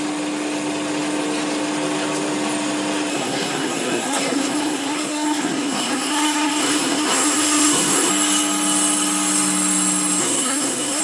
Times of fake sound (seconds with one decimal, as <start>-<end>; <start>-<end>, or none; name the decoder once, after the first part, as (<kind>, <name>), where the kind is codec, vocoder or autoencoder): 3.1-8.1 (codec, SNAC); 10.2-11.0